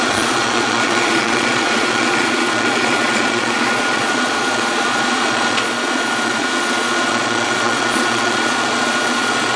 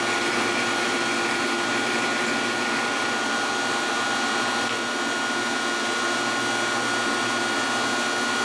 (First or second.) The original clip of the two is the second